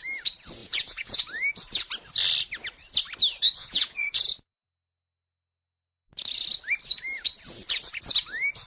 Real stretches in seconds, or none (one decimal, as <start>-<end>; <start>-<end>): 0.0-0.6; 1.2-3.6; 4.3-8.7